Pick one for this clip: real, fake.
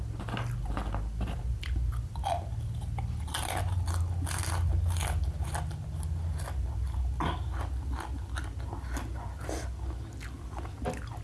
real